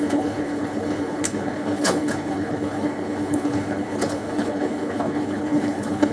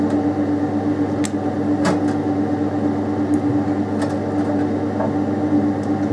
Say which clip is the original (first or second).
second